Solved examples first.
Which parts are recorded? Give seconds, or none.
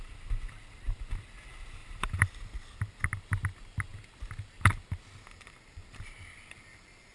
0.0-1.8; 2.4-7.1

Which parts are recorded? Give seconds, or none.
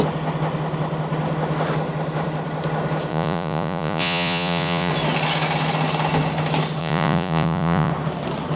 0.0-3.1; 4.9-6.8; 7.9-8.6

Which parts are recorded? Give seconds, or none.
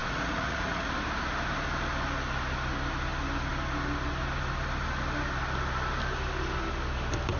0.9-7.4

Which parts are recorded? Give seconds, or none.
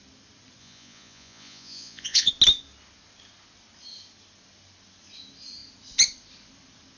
0.0-0.6; 2.3-7.0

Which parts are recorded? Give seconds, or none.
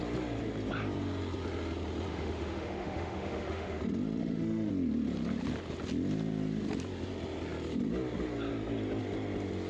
0.0-2.1; 3.8-4.2; 4.7-9.7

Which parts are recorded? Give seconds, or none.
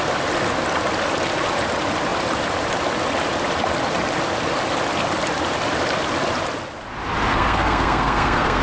0.0-7.3